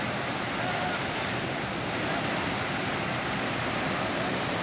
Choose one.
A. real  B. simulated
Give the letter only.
A